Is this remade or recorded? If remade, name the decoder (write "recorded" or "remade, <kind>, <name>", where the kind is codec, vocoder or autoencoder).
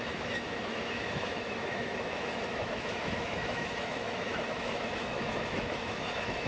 remade, autoencoder, DAC-VAE